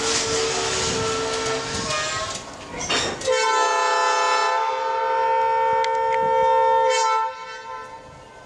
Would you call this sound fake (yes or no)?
no